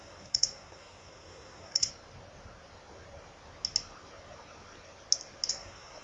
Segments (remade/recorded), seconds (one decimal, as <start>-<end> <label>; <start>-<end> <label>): 0.0-1.9 remade; 1.9-5.5 recorded; 5.5-6.0 remade

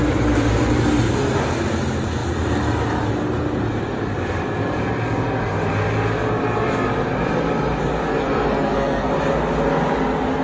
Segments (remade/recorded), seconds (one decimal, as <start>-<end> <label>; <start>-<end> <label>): 0.0-8.1 recorded; 8.1-9.1 remade; 9.1-10.4 recorded

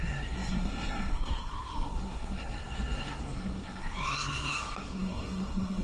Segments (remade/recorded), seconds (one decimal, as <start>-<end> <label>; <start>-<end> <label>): 0.0-5.8 remade